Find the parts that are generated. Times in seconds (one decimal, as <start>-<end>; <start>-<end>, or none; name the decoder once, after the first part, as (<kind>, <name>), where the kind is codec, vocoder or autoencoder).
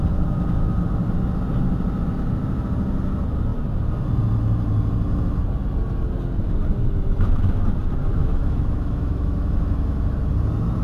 8.2-10.1 (autoencoder, DAC-VAE)